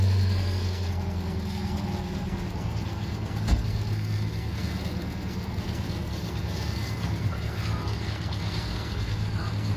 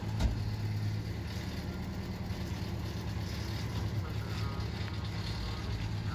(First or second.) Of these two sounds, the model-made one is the first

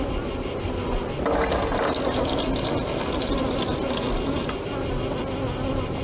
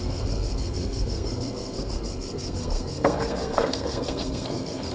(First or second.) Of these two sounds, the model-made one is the second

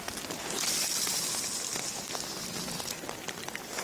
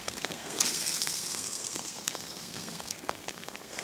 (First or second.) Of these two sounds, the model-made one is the second